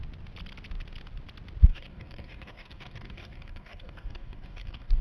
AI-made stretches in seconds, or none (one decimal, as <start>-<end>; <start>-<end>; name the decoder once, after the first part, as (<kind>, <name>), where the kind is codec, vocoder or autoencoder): 1.7-5.0 (codec, DAC)